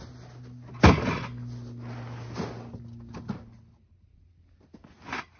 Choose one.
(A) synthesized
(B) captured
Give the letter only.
B